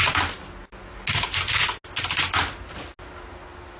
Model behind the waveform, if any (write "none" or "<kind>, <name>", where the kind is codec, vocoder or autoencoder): none